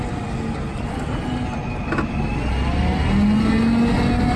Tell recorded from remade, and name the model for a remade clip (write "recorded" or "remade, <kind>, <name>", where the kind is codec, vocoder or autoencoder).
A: recorded